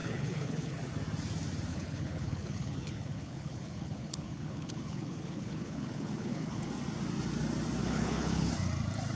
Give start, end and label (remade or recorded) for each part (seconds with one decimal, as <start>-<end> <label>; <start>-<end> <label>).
0.0-0.8 remade; 0.8-1.7 recorded; 1.7-6.7 remade; 6.7-7.8 recorded; 7.8-8.5 remade; 8.5-9.2 recorded